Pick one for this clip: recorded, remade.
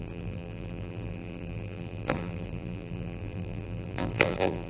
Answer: remade